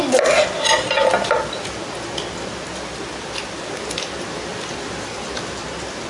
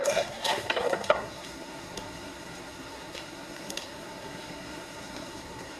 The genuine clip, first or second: first